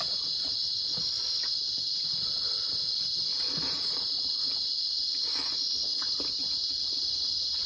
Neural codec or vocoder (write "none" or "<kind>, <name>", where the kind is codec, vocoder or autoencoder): none